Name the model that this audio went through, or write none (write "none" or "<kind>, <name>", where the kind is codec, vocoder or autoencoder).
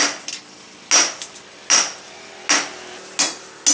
none